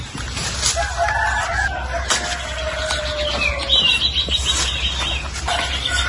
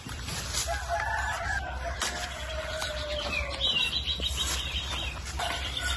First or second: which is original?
first